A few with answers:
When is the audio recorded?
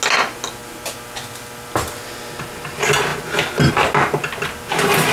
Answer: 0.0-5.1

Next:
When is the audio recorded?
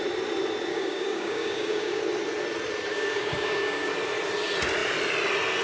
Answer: 0.0-0.7; 2.0-2.9; 3.9-5.6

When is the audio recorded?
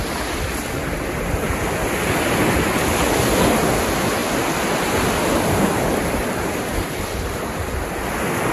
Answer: 0.0-8.5